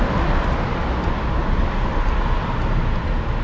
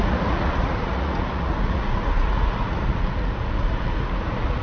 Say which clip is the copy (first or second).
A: second